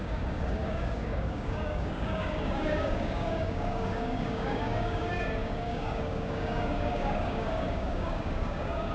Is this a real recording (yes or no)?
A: no